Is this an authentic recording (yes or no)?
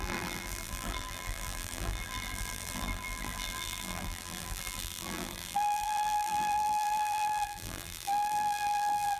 no